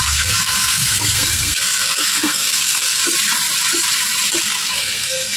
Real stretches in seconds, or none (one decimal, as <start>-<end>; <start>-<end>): 3.0-4.4